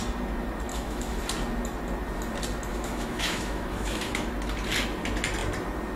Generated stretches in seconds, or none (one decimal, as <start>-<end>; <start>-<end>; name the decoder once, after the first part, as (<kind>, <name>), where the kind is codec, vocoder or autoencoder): 0.7-1.2 (autoencoder, DAC-VAE); 2.7-4.3